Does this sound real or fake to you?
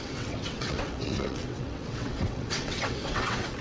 fake